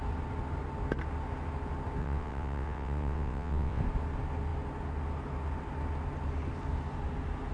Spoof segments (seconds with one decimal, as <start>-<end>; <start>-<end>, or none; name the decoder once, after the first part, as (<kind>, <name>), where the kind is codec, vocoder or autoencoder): 2.0-3.8 (vocoder, WaveNeXt)